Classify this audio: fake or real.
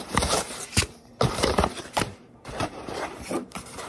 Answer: fake